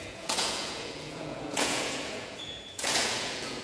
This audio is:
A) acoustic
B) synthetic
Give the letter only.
B